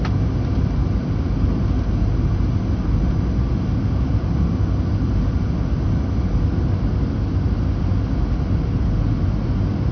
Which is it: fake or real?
real